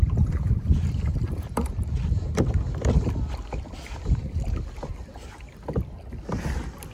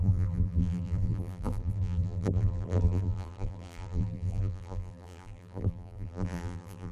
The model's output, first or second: second